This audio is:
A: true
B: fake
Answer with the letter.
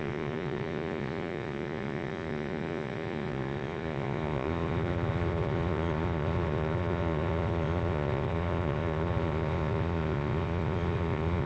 B